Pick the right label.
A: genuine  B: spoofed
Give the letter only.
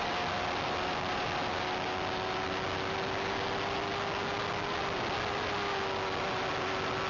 A